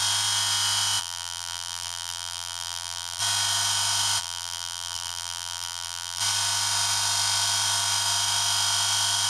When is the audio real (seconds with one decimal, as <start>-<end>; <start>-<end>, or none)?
0.0-1.0; 3.2-4.2; 6.2-9.3